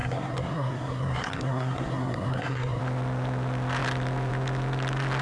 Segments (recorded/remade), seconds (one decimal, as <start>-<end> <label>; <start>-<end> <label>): 0.0-2.8 remade; 2.8-5.2 recorded